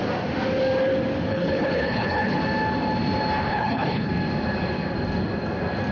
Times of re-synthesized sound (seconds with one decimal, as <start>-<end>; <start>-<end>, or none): 1.3-2.4; 3.5-4.1

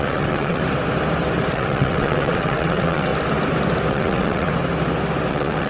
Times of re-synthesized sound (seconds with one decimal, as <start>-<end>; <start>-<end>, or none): 0.0-0.6; 1.5-3.1; 3.9-4.5; 5.3-5.7

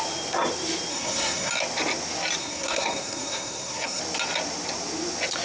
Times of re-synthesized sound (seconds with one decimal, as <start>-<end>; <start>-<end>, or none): 0.9-1.5; 2.4-4.0

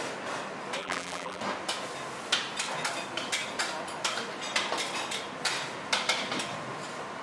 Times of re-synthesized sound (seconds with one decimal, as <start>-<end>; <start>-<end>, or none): 0.8-1.4